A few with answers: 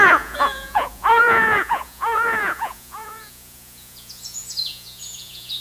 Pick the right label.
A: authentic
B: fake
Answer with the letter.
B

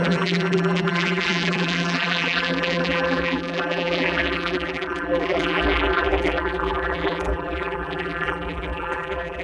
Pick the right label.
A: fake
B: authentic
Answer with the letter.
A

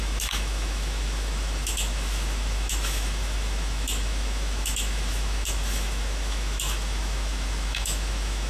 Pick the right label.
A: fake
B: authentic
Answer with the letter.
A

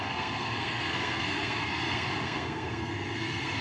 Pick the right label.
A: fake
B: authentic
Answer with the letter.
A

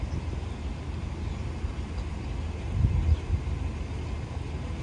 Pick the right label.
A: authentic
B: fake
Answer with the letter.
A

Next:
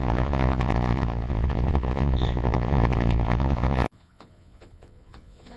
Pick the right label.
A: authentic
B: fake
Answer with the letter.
B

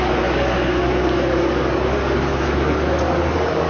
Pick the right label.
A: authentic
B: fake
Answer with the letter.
B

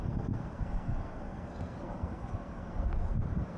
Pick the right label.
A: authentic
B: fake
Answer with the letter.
B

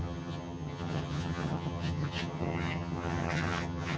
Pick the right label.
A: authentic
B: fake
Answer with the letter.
B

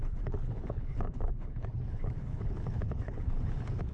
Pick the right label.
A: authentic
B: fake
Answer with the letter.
B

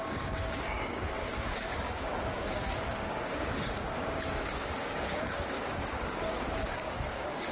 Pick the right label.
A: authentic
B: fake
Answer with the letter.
B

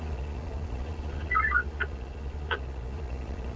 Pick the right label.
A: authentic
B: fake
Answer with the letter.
B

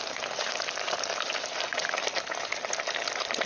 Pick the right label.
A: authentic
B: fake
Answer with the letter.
A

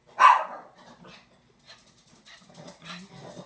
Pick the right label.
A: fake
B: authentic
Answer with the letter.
B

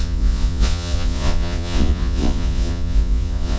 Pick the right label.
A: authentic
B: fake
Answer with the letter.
B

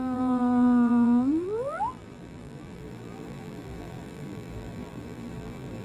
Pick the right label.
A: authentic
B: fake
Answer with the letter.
B